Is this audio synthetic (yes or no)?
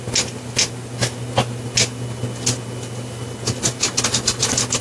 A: no